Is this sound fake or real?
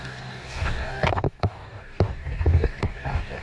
fake